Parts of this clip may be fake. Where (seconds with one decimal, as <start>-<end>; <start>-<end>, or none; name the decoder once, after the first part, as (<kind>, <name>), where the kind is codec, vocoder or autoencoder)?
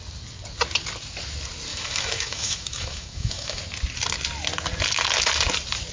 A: 1.7-3.6 (autoencoder, DAC-VAE)